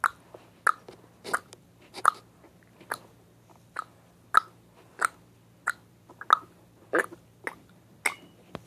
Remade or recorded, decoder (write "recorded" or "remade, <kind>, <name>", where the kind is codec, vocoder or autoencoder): recorded